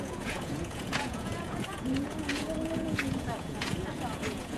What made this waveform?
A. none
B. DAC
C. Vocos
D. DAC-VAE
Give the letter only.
C